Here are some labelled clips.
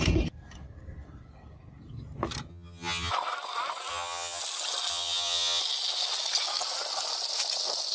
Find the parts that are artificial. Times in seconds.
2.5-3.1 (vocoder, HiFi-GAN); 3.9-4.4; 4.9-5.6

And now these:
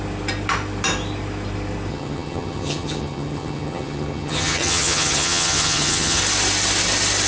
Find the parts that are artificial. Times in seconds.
1.9-6.2 (vocoder, HiFi-GAN)

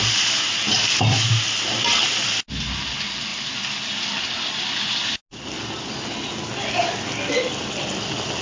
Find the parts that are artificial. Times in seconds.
none

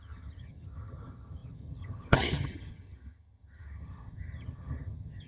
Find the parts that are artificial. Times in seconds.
0.0-5.3 (vocoder, HiFi-GAN)

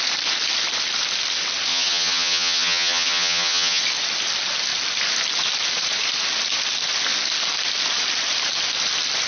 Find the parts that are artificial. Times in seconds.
1.7-3.8 (vocoder, HiFi-GAN)

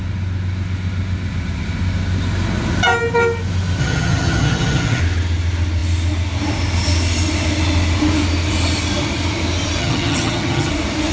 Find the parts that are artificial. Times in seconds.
3.8-5.0 (vocoder, HiFi-GAN); 9.8-10.7

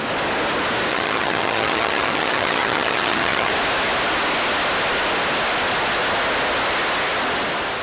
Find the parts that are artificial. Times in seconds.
0.9-3.5 (vocoder, HiFi-GAN)